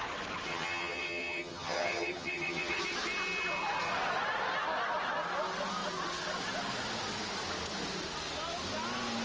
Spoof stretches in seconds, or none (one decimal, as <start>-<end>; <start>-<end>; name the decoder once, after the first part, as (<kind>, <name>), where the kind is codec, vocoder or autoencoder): 0.5-2.8 (vocoder, HiFi-GAN)